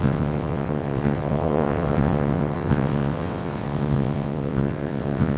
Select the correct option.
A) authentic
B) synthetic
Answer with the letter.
B